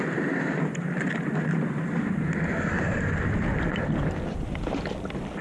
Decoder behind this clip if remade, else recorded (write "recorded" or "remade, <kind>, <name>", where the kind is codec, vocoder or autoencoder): remade, vocoder, BigVGAN v2